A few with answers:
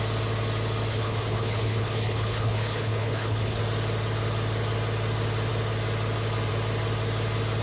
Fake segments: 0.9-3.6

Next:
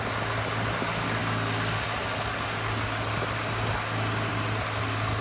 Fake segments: none

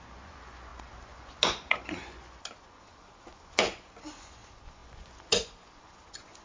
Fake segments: 0.0-6.4